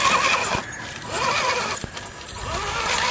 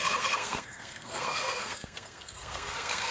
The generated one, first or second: second